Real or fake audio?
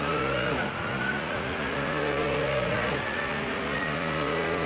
fake